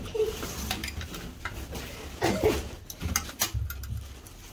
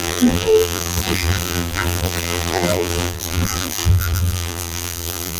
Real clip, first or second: first